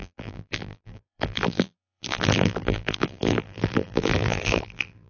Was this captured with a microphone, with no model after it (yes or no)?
no